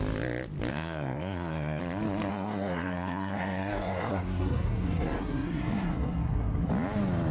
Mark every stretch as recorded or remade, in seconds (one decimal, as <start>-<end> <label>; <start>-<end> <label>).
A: 0.0-0.7 recorded; 0.7-1.8 remade; 1.8-2.3 recorded; 2.3-6.7 remade; 6.7-7.3 recorded